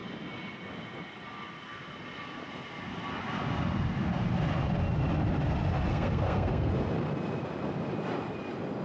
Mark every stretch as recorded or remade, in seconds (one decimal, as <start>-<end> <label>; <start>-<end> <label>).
0.0-5.9 recorded; 5.9-6.7 remade; 6.7-8.8 recorded